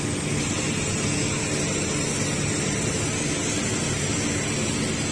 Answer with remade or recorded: recorded